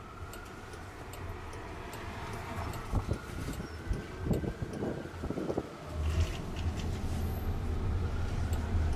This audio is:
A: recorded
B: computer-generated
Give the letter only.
A